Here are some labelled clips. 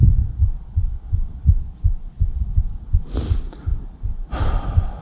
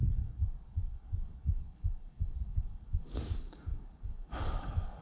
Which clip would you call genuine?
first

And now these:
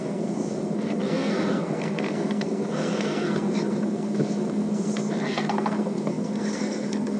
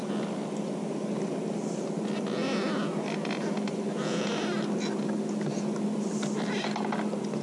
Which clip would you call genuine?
second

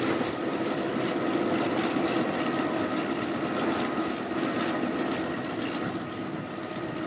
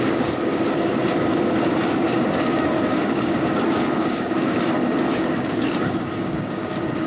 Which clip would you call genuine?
first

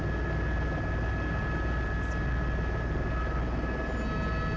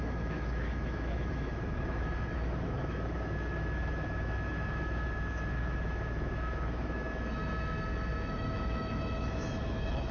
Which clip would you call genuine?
first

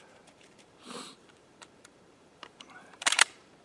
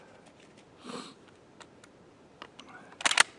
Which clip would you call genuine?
second